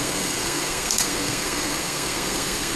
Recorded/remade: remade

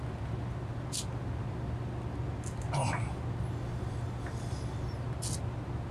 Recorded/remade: recorded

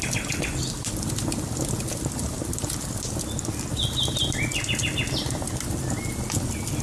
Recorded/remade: recorded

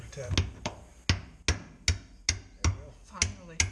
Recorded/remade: recorded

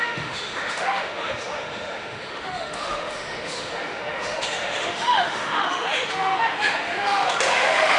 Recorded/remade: remade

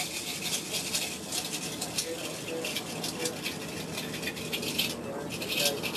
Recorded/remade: recorded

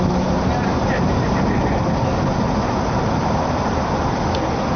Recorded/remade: recorded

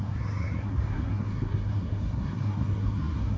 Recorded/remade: remade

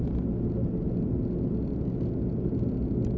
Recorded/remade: recorded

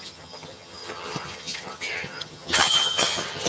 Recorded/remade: remade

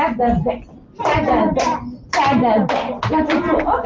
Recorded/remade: recorded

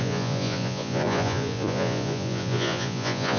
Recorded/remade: remade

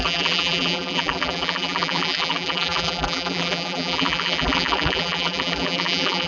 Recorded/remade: remade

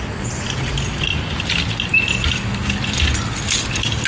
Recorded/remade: recorded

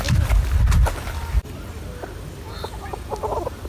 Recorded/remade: recorded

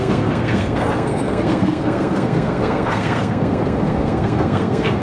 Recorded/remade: remade